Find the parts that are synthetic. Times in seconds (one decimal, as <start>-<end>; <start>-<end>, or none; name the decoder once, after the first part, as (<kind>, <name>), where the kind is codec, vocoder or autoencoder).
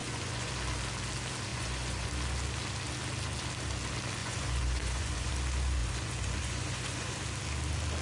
0.0-0.5 (vocoder, Vocos); 1.5-2.1; 4.2-5.3; 5.8-7.2